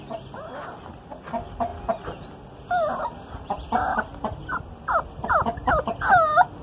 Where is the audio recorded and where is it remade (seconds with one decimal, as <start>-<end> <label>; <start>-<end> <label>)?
0.0-6.6 recorded